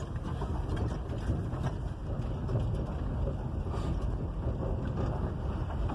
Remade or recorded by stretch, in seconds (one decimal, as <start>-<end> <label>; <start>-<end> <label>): 0.0-2.0 remade; 2.0-5.5 recorded; 5.5-5.9 remade